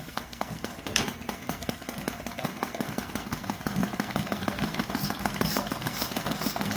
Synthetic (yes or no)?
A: yes